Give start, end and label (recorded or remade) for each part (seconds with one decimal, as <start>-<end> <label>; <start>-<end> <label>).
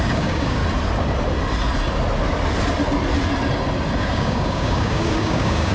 0.0-0.6 remade; 0.6-4.0 recorded; 4.0-5.7 remade